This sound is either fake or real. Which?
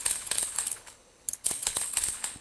fake